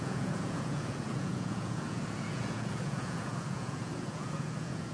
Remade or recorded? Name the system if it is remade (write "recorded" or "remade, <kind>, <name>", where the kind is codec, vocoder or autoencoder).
remade, vocoder, Vocos